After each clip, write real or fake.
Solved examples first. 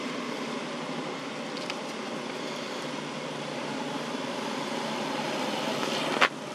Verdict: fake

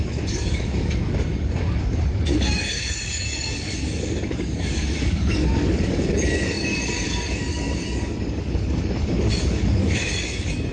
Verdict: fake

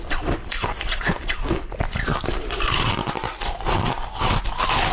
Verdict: fake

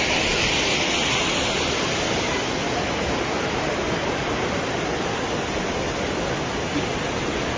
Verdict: real